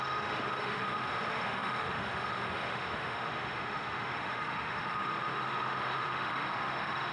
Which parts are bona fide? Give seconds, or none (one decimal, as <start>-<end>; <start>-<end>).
none